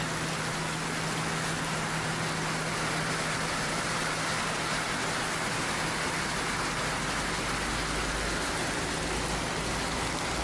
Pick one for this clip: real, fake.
real